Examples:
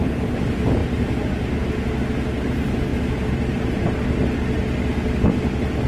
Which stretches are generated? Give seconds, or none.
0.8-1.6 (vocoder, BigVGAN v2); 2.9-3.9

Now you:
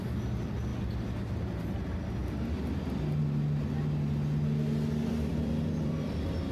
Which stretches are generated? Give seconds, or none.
0.0-0.7 (vocoder, BigVGAN v2); 1.8-2.2; 5.1-6.5